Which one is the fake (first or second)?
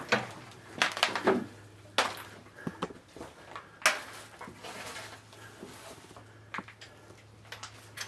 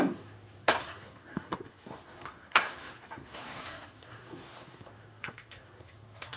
second